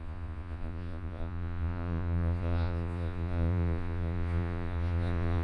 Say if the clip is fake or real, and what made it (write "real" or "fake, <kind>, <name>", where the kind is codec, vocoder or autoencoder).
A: fake, vocoder, Vocos